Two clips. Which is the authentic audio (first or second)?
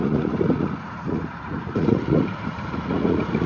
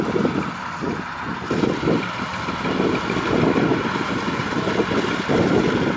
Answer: second